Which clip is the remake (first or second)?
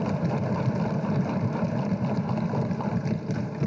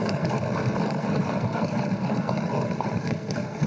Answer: second